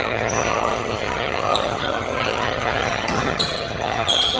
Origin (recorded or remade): remade